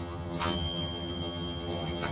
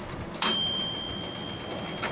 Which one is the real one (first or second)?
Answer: second